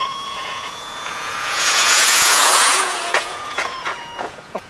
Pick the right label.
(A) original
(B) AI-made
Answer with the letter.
B